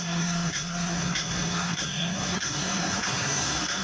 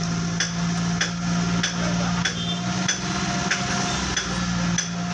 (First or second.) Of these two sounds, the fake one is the first